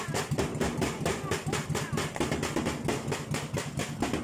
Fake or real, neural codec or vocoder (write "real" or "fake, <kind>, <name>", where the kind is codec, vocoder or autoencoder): real